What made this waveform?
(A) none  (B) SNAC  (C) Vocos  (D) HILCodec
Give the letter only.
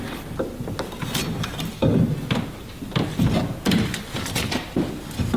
A